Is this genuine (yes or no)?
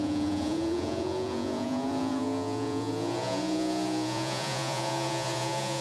no